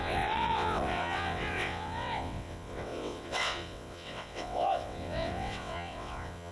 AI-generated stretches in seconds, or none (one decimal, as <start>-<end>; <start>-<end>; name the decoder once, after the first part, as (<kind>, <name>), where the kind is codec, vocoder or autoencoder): 0.0-6.5 (vocoder, WaveNeXt)